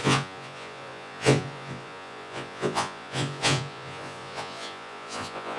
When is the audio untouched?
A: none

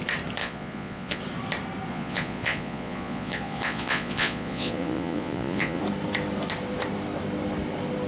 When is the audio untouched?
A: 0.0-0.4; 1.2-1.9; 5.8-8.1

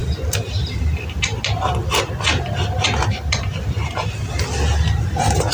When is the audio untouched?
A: 0.0-5.5

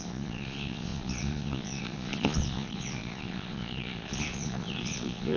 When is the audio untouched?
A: none

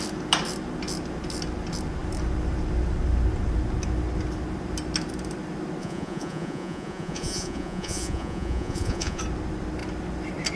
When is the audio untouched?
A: 0.0-5.8; 9.2-10.6

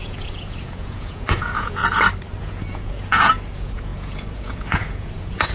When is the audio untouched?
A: 1.8-2.4